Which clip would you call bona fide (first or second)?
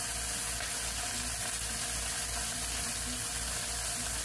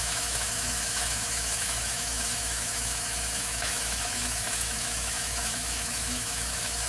first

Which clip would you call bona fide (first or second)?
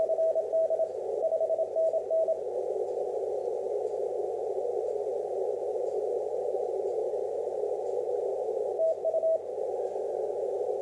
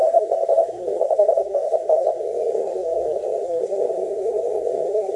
first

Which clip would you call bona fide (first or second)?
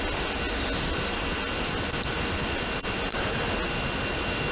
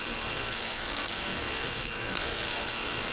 first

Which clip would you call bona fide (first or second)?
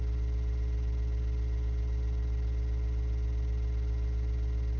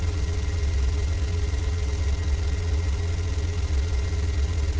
first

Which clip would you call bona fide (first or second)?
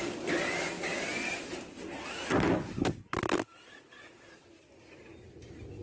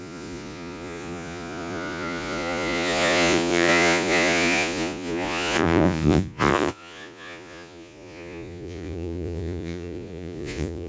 first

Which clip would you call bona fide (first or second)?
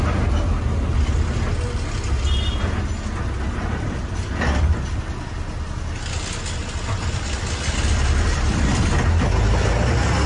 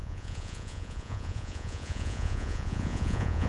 first